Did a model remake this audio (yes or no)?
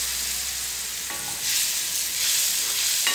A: no